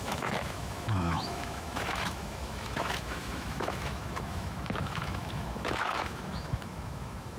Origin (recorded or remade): remade